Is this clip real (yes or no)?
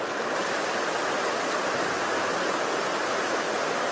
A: yes